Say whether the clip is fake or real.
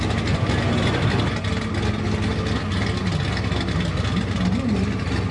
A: real